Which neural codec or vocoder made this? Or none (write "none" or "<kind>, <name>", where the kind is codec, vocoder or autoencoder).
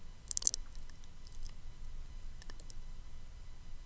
none